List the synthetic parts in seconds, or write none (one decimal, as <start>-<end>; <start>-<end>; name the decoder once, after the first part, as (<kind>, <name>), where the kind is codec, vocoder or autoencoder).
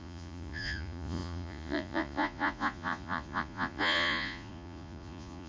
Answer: 0.0-5.5 (vocoder, Vocos)